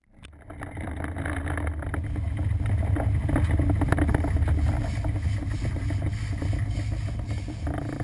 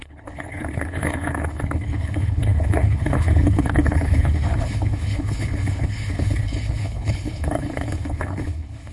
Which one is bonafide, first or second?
first